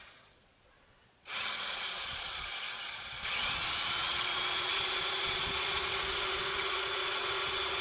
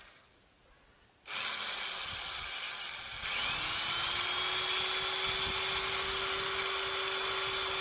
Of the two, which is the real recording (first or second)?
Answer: second